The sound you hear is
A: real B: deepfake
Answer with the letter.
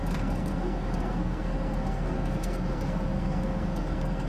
B